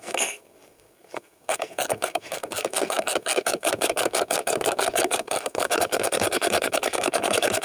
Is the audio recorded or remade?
remade